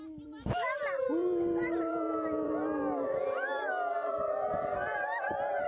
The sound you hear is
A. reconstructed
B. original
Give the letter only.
A